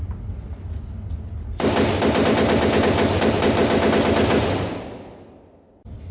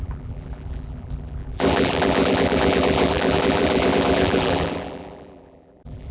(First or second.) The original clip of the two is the first